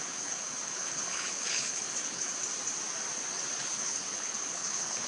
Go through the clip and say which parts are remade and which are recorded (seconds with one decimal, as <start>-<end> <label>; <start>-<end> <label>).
0.0-2.3 remade; 2.3-3.6 recorded; 3.6-5.1 remade